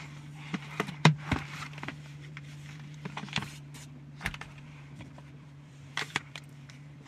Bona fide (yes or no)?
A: no